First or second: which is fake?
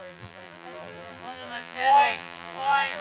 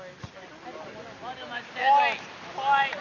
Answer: first